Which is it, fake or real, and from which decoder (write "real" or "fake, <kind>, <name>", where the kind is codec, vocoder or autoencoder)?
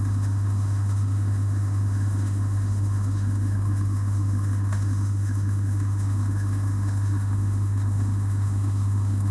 fake, autoencoder, DAC-VAE